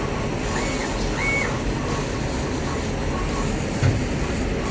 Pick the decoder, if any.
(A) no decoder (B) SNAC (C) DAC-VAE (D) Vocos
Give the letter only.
A